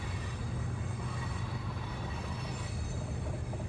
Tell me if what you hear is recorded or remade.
recorded